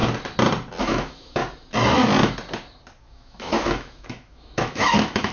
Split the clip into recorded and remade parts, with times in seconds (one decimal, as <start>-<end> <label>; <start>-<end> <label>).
0.0-0.8 recorded; 0.8-1.4 remade; 1.4-3.0 recorded; 3.0-5.3 remade